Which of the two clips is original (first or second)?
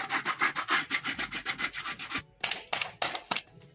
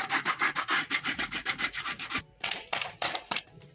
first